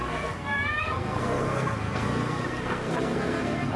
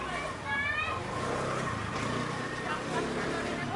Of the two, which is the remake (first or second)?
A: first